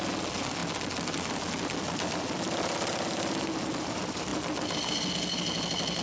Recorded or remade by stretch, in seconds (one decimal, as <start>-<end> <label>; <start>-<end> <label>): 0.0-6.0 recorded